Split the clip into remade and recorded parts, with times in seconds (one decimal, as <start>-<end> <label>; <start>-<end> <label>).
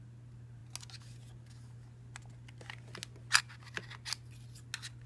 0.0-5.1 recorded